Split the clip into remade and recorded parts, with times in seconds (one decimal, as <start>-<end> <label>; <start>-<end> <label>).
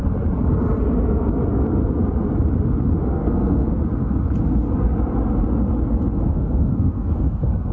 0.0-3.0 recorded; 3.0-3.8 remade; 3.8-6.3 recorded; 6.3-7.7 remade